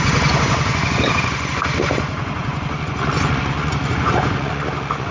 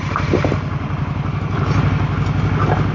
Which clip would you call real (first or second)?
second